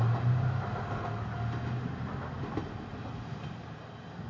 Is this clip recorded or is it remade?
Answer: recorded